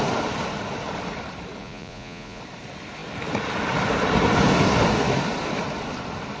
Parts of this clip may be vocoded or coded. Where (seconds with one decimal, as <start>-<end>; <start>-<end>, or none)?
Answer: 1.6-2.4